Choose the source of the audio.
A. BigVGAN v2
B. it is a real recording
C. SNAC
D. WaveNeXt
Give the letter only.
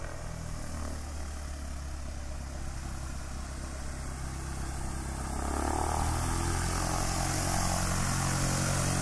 B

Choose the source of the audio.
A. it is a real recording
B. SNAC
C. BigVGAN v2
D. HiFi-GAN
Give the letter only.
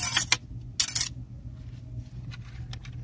A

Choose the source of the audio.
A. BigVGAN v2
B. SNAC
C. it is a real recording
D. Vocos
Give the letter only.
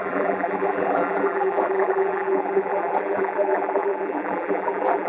A